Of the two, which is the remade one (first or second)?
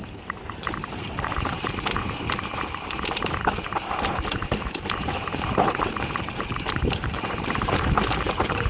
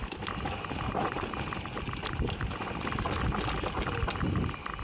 first